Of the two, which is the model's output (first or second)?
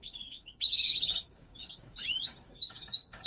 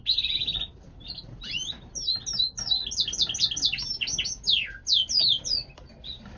first